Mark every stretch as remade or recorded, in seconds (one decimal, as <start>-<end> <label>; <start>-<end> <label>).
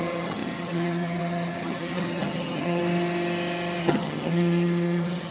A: 0.0-2.8 remade; 2.8-3.8 recorded; 3.8-5.3 remade